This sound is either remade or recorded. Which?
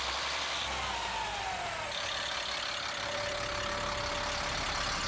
recorded